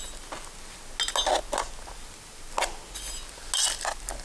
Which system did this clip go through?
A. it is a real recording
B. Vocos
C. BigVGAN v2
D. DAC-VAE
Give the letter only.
A